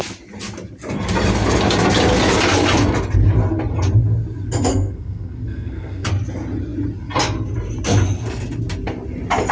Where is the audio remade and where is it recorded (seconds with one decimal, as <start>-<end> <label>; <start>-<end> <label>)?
0.0-4.7 recorded; 4.7-6.1 remade; 6.1-9.5 recorded